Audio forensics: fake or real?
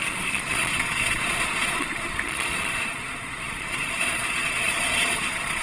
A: fake